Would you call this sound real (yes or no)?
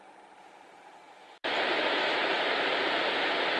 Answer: no